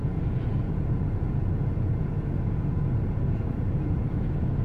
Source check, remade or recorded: remade